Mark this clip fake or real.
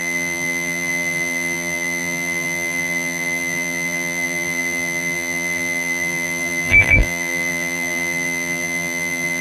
fake